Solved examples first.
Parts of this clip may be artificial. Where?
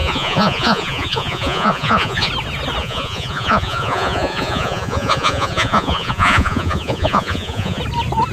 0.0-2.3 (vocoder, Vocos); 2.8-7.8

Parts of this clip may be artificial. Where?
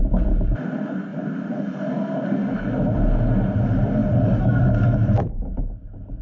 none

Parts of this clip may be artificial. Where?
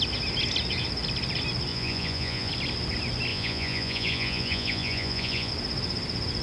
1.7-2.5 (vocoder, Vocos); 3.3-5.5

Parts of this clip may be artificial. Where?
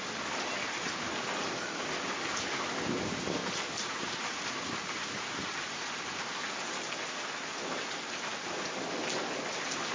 none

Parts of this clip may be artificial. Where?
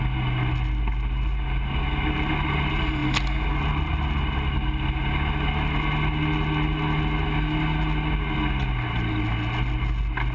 none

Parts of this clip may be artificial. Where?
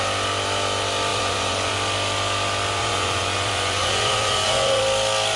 1.1-1.7 (vocoder, Vocos); 2.8-4.8